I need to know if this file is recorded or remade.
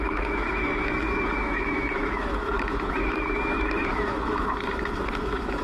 remade